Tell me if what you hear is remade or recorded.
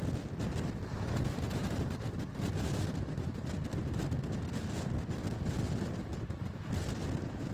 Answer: recorded